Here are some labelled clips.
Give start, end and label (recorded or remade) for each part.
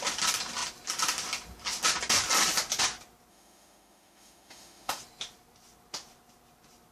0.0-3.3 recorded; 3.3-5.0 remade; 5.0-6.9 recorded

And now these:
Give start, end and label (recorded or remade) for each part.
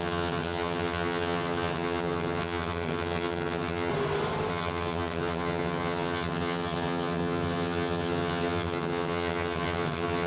0.0-3.9 remade; 3.9-4.5 recorded; 4.5-10.3 remade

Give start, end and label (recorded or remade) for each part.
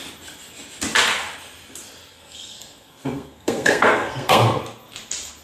0.0-2.1 recorded; 2.1-4.6 remade; 4.6-5.4 recorded